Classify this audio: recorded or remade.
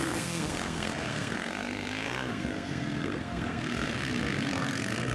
remade